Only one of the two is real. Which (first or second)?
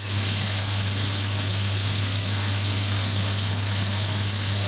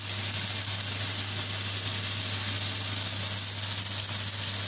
second